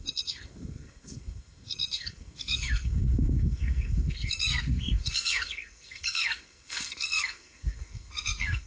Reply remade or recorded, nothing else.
remade